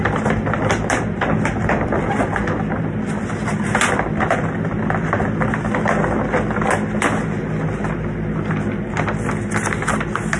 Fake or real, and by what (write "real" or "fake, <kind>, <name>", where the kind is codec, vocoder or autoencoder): real